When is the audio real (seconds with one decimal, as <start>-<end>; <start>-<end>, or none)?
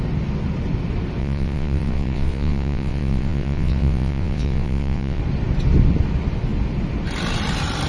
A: 0.0-1.2; 5.2-7.9